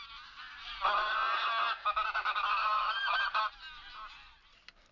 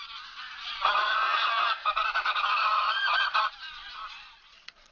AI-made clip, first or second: second